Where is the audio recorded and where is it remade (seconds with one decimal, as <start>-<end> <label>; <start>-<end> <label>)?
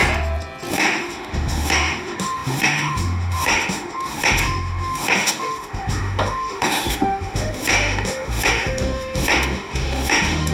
0.0-0.7 recorded; 0.7-10.5 remade